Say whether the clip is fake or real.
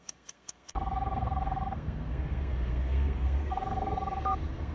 fake